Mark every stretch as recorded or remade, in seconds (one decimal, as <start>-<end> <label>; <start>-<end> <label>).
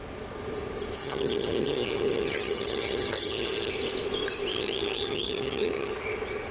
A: 0.0-1.0 recorded; 1.0-3.7 remade; 3.7-4.5 recorded; 4.5-5.9 remade; 5.9-6.5 recorded